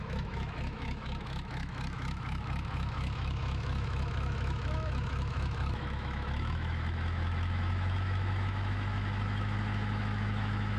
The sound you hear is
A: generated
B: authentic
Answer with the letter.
A